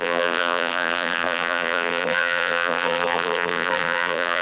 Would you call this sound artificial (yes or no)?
yes